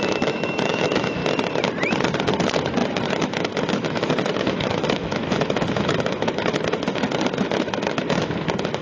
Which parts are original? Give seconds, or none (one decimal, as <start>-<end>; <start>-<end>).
1.2-2.4